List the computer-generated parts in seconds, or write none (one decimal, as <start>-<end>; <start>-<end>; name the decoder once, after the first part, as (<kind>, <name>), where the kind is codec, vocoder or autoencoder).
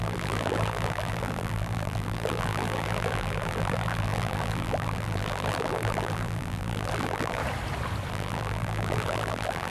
0.0-7.4 (vocoder, BigVGAN v2); 8.1-9.7